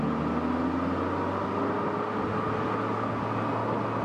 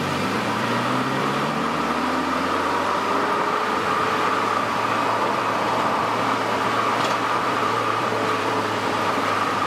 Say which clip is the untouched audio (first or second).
first